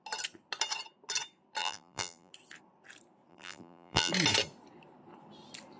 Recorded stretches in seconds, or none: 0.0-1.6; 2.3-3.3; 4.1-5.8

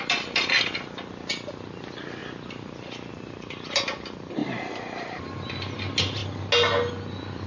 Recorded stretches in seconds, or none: 0.0-4.4; 5.2-7.5

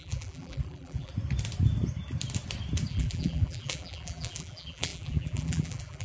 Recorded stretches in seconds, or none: 1.1-2.9

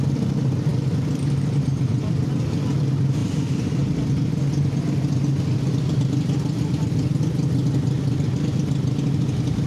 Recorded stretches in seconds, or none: 0.0-0.7; 2.2-3.2; 7.8-9.7

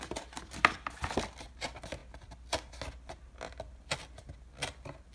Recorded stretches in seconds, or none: 0.0-5.1

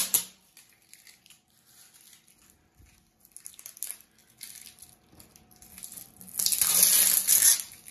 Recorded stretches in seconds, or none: 1.7-7.9